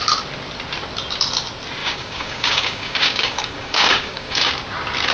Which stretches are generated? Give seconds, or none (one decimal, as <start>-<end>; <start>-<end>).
1.8-4.5